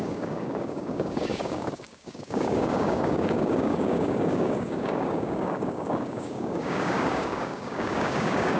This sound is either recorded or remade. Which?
remade